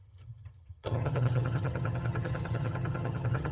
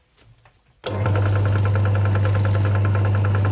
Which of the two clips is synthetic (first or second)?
first